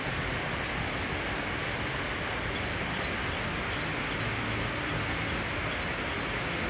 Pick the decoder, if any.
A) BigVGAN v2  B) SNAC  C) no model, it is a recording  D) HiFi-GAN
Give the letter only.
C